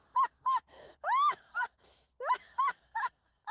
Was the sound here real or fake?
fake